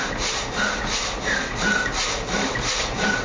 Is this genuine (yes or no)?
yes